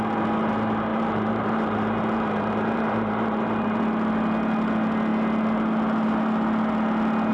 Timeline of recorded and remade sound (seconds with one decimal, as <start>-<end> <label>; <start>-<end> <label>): 0.0-0.9 recorded; 0.9-3.8 remade; 3.8-7.3 recorded